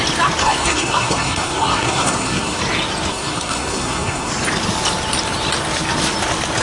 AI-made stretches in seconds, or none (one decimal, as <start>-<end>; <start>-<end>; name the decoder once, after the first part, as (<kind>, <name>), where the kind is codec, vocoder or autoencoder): 0.4-2.6 (codec, SNAC); 3.1-4.3